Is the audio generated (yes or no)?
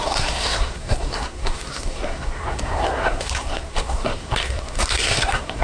yes